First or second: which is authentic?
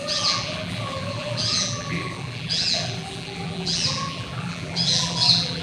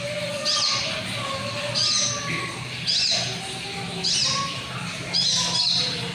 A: second